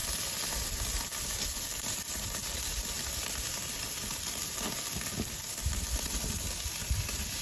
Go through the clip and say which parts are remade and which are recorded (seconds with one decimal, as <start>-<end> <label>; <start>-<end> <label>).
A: 0.0-7.4 recorded